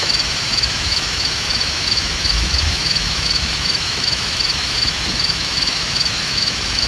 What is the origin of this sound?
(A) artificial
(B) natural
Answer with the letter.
A